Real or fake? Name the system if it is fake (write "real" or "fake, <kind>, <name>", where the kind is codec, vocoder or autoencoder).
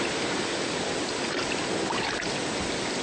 real